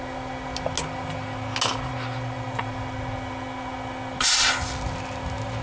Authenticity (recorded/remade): recorded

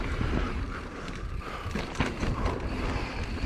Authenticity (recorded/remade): remade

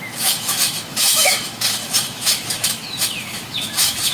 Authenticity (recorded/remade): remade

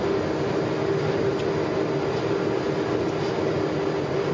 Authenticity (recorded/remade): recorded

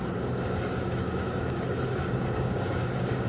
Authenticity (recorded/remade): remade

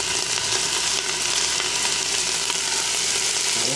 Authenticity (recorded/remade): recorded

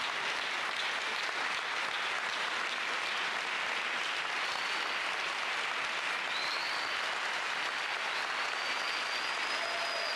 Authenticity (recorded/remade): recorded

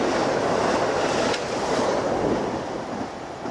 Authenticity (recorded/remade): recorded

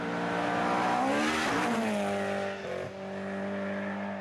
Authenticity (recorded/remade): recorded